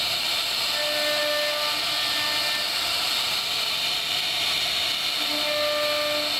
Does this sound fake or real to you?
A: real